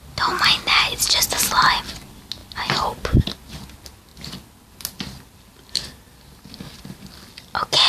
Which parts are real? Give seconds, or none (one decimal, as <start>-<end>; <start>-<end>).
0.0-7.9